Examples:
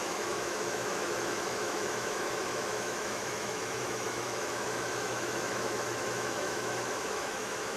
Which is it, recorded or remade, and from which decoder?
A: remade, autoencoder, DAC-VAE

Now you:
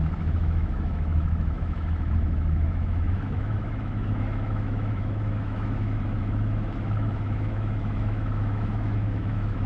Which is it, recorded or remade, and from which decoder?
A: remade, autoencoder, DAC-VAE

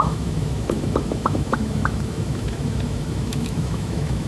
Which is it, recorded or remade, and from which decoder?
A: remade, autoencoder, DAC-VAE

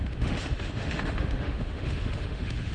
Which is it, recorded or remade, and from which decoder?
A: remade, autoencoder, DAC-VAE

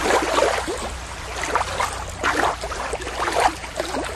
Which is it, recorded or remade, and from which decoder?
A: recorded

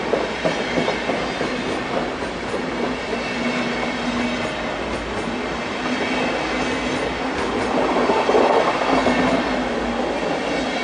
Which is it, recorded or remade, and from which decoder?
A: recorded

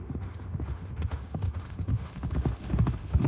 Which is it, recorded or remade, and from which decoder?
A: remade, autoencoder, DAC-VAE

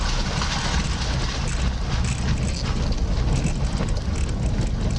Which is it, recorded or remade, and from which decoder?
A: recorded